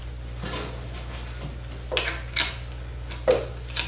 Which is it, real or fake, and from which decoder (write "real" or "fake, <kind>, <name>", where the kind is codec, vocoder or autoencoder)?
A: real